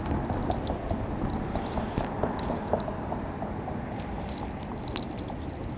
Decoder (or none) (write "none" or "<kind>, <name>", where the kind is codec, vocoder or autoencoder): none